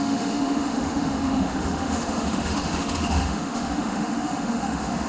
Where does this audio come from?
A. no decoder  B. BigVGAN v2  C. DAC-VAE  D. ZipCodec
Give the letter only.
C